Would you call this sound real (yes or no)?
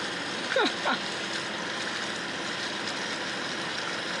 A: yes